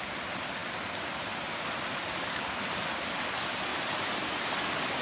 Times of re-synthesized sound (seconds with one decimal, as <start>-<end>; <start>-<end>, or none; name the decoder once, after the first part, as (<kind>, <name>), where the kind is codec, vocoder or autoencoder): 3.7-4.5 (vocoder, BigVGAN v2)

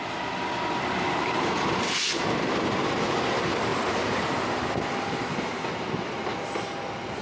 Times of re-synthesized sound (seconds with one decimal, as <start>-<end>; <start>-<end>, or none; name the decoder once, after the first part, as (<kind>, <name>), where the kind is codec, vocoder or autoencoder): none

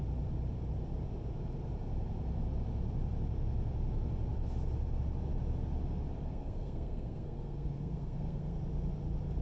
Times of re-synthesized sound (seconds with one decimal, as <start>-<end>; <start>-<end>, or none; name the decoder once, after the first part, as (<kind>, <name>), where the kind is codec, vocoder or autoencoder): 6.3-8.6 (codec, SNAC)

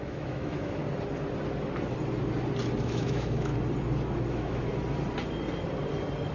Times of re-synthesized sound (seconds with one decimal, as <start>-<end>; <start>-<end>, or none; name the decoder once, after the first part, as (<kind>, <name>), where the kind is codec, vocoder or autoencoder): 0.0-0.8 (autoencoder, DAC-VAE); 2.8-3.5; 4.3-4.7